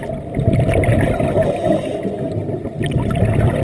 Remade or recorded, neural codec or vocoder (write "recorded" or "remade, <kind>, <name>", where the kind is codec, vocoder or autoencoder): recorded